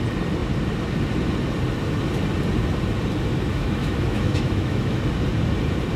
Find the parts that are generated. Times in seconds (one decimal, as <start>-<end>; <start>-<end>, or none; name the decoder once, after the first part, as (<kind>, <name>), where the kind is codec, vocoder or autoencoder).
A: 3.5-5.0 (autoencoder, DAC-VAE)